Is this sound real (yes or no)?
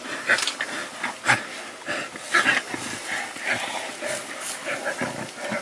yes